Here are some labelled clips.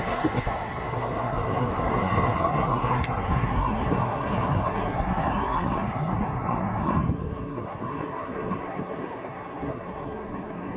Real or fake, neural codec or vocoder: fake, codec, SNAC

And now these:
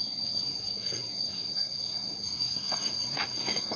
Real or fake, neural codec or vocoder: fake, codec, SNAC